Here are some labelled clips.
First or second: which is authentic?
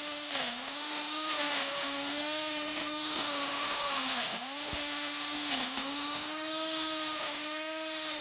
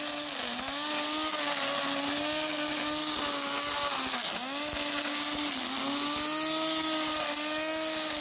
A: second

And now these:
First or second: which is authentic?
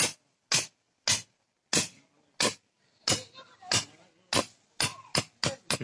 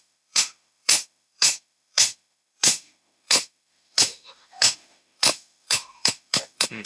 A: first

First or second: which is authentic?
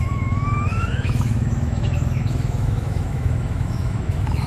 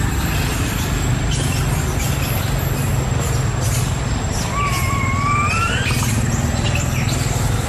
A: second